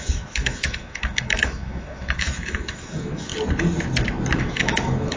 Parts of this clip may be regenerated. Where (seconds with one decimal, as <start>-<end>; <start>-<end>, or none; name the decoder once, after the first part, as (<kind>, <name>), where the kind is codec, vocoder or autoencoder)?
0.0-3.3 (autoencoder, DAC-VAE); 4.4-5.2